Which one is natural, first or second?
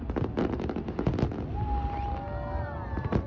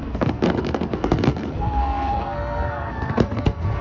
first